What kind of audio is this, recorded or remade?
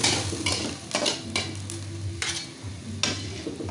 recorded